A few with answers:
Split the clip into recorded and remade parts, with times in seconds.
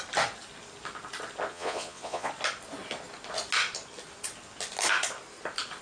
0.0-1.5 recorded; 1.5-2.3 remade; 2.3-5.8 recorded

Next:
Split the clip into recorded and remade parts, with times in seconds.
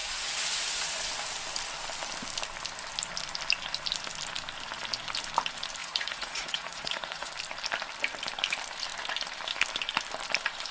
0.0-1.1 remade; 1.1-5.8 recorded; 5.8-7.3 remade; 7.3-10.7 recorded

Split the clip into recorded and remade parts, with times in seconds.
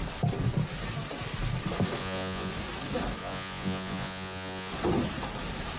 0.0-2.0 recorded; 2.0-2.5 remade; 2.5-3.2 recorded; 3.2-4.7 remade; 4.7-5.8 recorded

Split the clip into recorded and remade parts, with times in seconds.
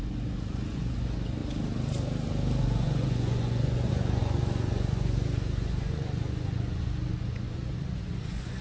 0.0-1.4 remade; 1.4-2.6 recorded; 2.6-8.6 remade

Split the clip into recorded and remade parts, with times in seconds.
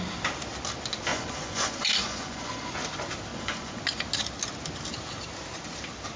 0.0-1.1 recorded; 1.1-2.7 remade; 2.7-3.3 recorded; 3.3-3.8 remade; 3.8-6.2 recorded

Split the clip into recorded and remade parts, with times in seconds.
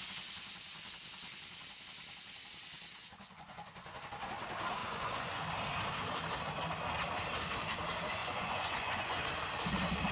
0.0-3.0 recorded; 3.0-4.0 remade; 4.0-4.8 recorded; 4.8-5.4 remade; 5.4-8.2 recorded; 8.2-9.2 remade; 9.2-10.1 recorded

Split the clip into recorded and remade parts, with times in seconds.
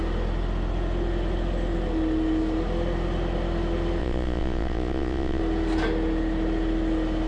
0.0-4.0 recorded; 4.0-5.4 remade; 5.4-7.3 recorded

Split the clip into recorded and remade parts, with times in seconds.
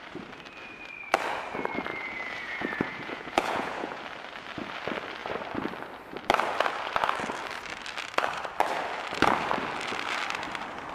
0.0-1.9 recorded; 1.9-4.0 remade; 4.0-10.9 recorded